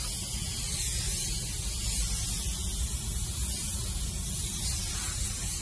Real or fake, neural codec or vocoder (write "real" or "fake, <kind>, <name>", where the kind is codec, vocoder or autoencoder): real